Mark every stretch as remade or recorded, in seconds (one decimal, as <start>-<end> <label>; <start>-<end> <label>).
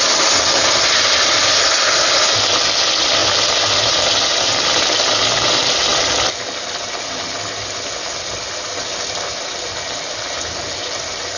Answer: 0.0-11.4 recorded